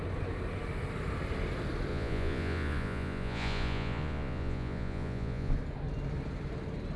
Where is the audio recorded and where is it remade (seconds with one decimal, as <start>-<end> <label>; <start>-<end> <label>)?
0.0-1.9 recorded; 1.9-5.5 remade; 5.5-7.0 recorded